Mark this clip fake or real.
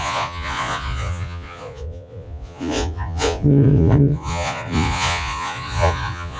fake